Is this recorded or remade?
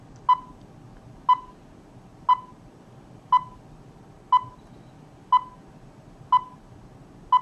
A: recorded